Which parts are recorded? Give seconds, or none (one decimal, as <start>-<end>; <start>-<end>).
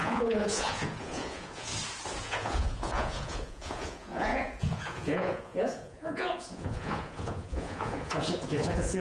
1.7-2.2